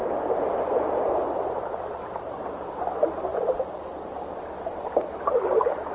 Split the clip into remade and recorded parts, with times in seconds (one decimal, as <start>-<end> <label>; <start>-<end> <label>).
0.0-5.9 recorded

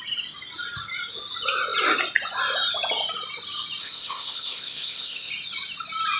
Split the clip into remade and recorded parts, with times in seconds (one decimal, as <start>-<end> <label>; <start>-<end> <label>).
0.0-3.8 recorded; 3.8-5.3 remade; 5.3-6.2 recorded

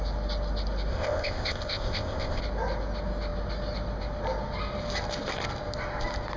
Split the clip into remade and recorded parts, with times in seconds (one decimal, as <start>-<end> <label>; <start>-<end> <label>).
0.0-0.9 recorded; 0.9-2.4 remade; 2.4-6.4 recorded

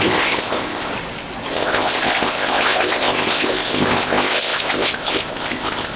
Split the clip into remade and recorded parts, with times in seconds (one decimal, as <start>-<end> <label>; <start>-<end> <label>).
0.0-0.9 remade; 0.9-1.5 recorded; 1.5-6.0 remade